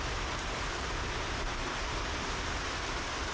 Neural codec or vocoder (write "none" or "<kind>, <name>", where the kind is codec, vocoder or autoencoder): none